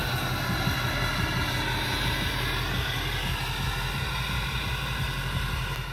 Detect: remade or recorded recorded